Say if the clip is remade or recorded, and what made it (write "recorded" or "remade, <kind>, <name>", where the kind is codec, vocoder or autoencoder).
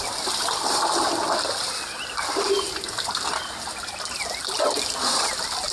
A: recorded